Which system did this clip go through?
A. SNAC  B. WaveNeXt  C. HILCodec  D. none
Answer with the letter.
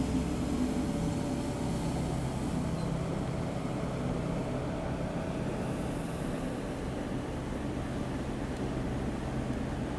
D